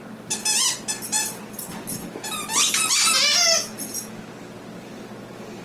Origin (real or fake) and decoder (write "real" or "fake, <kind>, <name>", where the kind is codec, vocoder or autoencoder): real